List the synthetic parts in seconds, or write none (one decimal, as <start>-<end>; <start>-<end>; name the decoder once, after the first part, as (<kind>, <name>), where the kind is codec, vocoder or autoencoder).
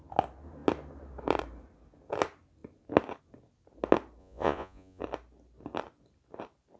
4.2-5.0 (vocoder, Vocos)